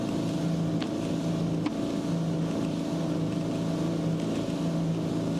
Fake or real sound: real